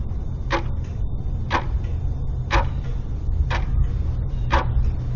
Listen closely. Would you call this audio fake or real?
real